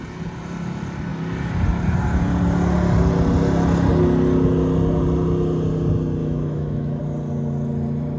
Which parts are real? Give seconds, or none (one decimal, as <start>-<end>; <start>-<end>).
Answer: 0.0-6.2; 7.0-8.2